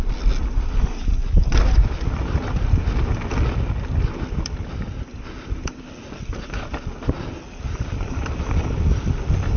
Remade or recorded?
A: recorded